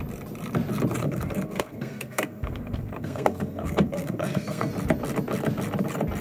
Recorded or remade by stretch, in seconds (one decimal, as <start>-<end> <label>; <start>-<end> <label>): 0.0-1.0 recorded; 1.0-4.7 remade; 4.7-6.2 recorded